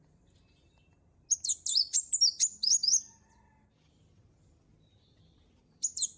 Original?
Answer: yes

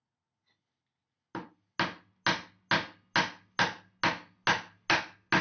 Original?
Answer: yes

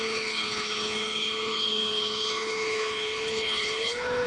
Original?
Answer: no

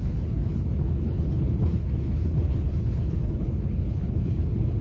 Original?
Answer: no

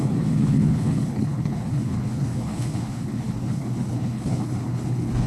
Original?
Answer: no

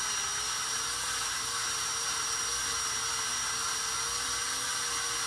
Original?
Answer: yes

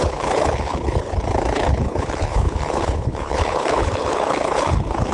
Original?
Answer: no